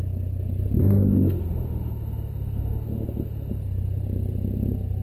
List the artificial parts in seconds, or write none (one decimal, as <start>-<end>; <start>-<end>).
0.8-3.6